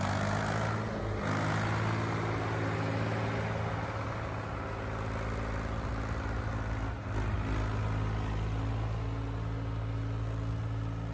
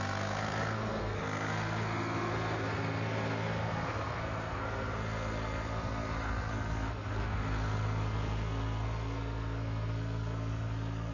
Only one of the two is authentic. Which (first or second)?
first